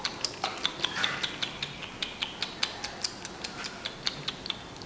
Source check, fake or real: real